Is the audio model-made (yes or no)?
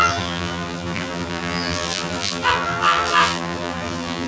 yes